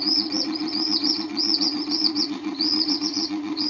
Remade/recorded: remade